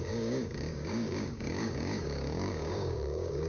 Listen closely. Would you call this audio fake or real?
fake